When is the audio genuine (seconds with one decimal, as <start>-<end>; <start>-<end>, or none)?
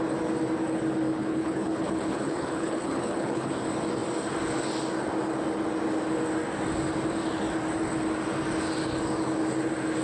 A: 0.0-1.2; 3.5-10.0